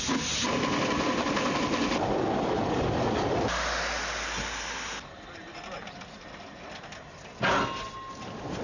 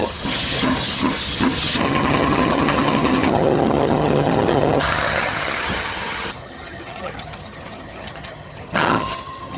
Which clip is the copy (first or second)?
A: second